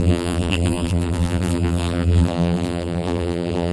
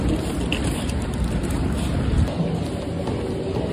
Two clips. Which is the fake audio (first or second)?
first